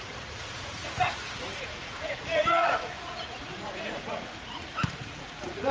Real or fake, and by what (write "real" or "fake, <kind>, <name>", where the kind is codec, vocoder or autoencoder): fake, vocoder, Vocos